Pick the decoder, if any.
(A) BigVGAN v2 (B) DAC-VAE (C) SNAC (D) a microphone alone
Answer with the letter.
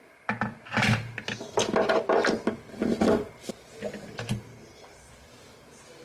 D